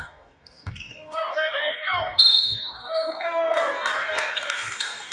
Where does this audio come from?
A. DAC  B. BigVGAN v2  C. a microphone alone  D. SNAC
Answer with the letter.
A